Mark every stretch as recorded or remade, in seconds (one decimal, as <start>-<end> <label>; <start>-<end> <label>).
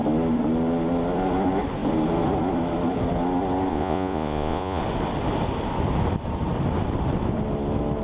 0.0-3.7 recorded; 3.7-4.8 remade; 4.8-8.0 recorded